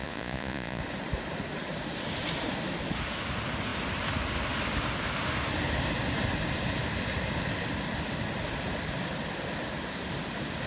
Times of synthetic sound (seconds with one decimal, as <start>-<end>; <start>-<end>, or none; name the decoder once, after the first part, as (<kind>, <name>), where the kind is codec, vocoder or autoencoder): 0.0-0.8 (vocoder, Vocos)